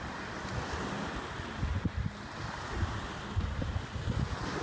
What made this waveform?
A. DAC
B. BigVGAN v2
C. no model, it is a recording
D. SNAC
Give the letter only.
C